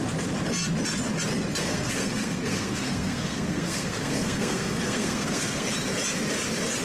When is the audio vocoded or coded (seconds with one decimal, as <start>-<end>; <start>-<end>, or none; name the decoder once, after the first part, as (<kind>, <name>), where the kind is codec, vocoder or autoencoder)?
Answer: 1.6-5.7 (codec, SNAC)